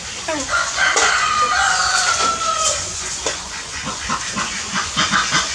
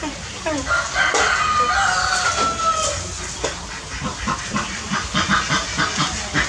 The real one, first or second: second